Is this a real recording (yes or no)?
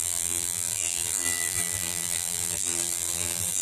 no